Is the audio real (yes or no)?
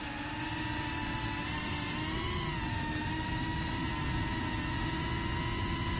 yes